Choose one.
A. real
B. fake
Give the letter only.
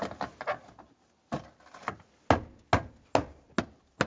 A